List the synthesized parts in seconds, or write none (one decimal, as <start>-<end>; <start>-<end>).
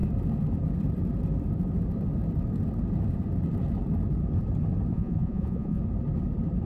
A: 4.9-5.8